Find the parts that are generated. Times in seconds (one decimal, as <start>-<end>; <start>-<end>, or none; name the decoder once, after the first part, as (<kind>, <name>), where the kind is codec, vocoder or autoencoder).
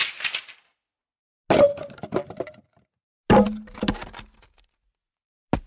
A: none